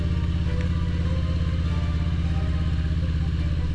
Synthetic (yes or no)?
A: no